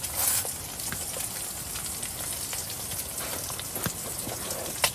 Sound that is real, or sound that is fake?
real